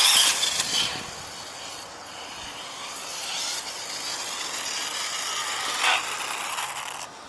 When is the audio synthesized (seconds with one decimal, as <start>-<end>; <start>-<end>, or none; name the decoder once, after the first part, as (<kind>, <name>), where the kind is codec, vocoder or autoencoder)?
none